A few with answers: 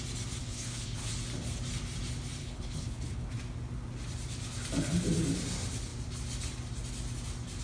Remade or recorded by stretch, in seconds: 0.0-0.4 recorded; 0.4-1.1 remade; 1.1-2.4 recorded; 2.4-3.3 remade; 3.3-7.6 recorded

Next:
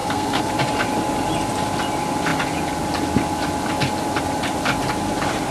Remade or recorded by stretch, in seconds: 0.0-0.5 remade; 0.5-5.5 recorded

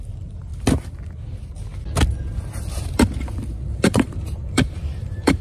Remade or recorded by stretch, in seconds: 0.0-0.5 remade; 0.5-3.7 recorded; 3.7-5.4 remade

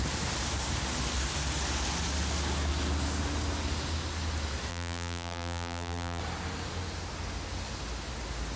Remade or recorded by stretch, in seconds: 0.0-4.7 recorded; 4.7-6.2 remade; 6.2-8.6 recorded

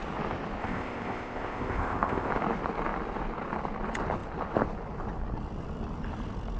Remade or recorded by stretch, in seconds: 0.0-0.6 recorded; 0.6-2.3 remade; 2.3-6.6 recorded